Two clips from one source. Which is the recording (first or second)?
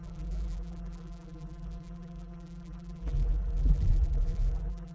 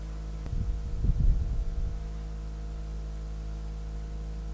second